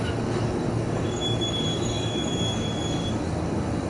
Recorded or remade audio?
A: remade